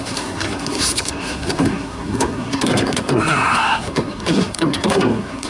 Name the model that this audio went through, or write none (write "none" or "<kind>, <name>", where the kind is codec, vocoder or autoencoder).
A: codec, SNAC